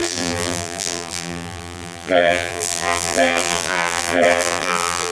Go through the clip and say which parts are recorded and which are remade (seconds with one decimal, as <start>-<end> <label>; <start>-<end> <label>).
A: 0.0-5.1 remade